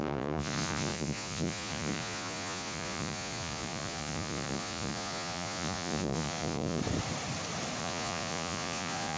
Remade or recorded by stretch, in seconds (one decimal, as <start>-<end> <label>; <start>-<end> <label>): 0.0-6.8 remade; 6.8-7.8 recorded; 7.8-9.2 remade